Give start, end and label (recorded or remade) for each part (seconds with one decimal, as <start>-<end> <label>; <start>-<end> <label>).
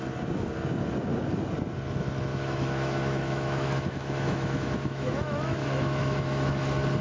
0.0-2.3 recorded; 2.3-6.5 remade; 6.5-7.0 recorded